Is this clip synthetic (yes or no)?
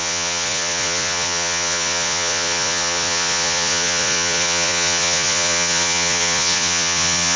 yes